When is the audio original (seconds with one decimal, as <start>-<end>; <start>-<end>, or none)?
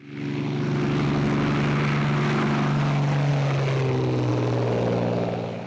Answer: 0.0-5.7